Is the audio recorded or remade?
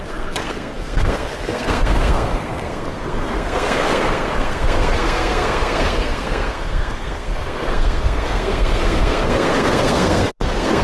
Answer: remade